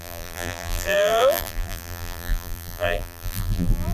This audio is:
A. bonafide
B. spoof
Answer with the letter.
B